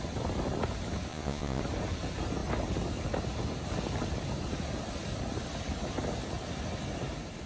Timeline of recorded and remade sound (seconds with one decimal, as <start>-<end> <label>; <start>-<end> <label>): 0.0-1.1 recorded; 1.1-1.6 remade; 1.6-7.5 recorded